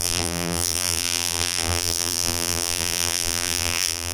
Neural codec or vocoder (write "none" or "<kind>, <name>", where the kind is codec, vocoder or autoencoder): vocoder, BigVGAN v2